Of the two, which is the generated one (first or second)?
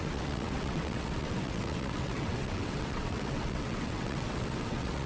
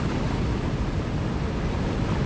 first